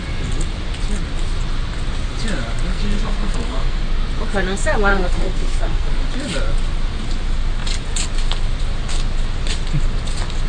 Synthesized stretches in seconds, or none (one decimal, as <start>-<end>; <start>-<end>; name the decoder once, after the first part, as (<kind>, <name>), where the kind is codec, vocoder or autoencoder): 2.7-3.8 (codec, SNAC); 4.9-5.9